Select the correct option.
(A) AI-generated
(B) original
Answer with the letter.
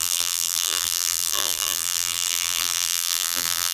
A